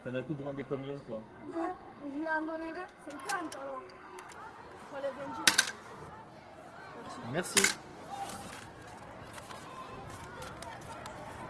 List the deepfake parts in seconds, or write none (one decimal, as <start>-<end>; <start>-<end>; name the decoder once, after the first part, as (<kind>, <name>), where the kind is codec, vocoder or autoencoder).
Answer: 0.0-3.1 (codec, SNAC); 3.7-4.3